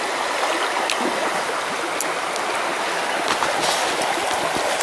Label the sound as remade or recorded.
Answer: recorded